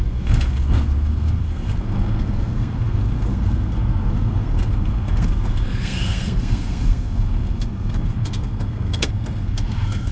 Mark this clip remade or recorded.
remade